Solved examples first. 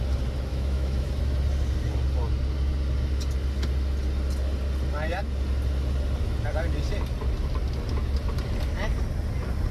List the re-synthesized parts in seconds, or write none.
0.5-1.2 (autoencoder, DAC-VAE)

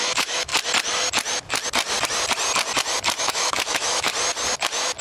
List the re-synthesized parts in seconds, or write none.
0.0-0.5 (autoencoder, DAC-VAE); 3.2-4.1

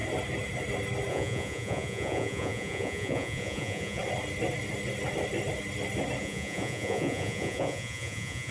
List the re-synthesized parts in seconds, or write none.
1.1-4.0 (vocoder, Vocos); 6.2-8.5

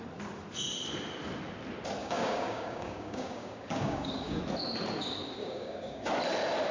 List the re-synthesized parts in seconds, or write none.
2.0-4.4 (codec, DAC); 5.4-6.1